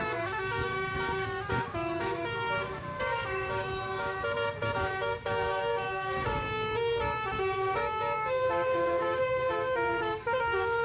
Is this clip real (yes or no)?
no